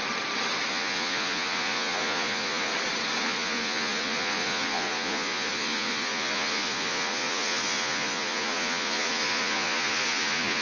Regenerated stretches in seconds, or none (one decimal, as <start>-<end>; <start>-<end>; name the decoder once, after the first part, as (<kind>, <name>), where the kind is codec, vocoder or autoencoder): 0.7-2.7 (vocoder, Vocos); 3.2-10.6